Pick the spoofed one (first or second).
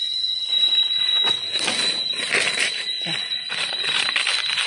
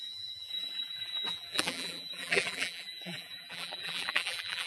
second